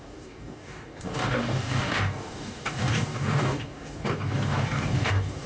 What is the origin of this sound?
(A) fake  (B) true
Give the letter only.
A